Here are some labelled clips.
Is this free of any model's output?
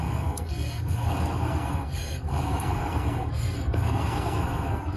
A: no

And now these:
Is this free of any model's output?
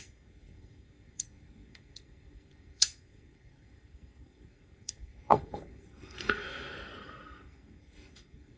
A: no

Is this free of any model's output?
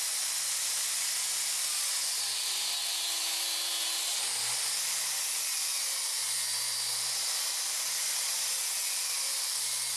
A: yes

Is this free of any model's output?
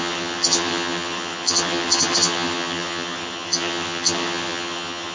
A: no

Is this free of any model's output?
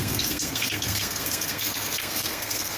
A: no